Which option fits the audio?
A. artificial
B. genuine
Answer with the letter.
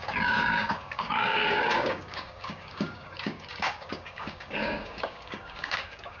A